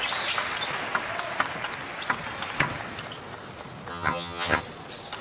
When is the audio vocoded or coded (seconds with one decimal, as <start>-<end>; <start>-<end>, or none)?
3.9-4.6